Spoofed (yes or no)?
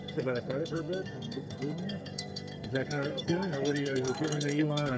yes